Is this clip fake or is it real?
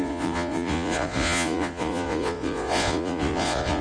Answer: fake